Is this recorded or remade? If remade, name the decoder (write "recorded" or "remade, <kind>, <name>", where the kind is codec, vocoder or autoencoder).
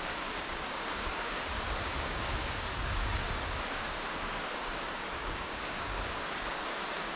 remade, codec, DAC